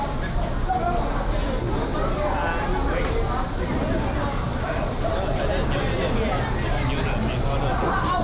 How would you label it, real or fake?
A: real